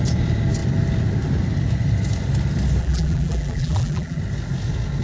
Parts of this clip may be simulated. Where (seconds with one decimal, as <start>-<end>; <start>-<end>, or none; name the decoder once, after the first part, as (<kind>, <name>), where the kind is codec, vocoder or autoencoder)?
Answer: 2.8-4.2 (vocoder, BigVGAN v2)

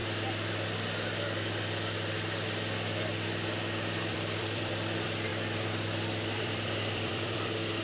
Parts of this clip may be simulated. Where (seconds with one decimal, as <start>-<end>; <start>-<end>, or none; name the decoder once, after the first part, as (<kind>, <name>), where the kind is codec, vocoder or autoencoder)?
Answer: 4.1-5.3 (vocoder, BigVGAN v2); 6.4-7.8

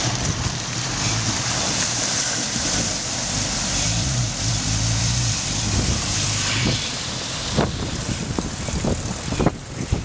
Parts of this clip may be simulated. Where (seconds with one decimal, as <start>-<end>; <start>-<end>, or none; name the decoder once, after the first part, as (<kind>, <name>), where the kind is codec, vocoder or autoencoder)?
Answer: 0.0-10.0 (vocoder, BigVGAN v2)

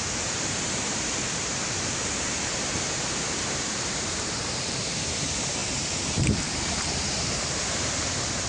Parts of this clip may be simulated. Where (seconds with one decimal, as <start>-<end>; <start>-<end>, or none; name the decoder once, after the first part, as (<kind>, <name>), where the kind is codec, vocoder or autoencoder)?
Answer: 0.0-8.5 (vocoder, BigVGAN v2)

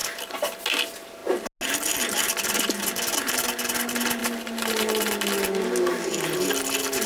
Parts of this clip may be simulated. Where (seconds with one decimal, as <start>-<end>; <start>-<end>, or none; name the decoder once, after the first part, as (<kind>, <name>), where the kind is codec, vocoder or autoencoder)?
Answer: none

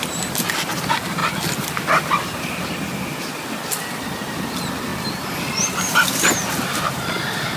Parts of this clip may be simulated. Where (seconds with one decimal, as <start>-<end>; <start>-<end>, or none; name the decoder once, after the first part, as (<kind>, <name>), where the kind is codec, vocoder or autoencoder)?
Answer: none

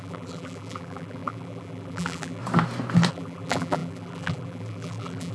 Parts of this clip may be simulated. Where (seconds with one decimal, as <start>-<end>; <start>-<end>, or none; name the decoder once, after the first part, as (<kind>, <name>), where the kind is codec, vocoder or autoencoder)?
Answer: 0.0-2.4 (vocoder, BigVGAN v2); 3.1-5.3

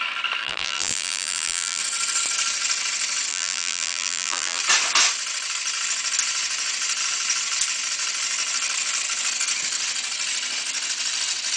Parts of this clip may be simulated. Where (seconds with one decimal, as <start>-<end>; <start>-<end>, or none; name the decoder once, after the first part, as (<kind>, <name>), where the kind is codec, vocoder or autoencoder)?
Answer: 0.4-1.8 (vocoder, BigVGAN v2); 3.3-4.6